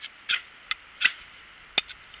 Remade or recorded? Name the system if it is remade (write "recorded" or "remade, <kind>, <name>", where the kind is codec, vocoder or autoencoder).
recorded